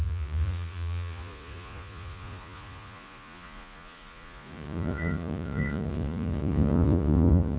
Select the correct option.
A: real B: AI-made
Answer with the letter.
B